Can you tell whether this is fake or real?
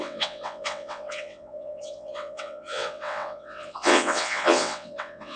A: fake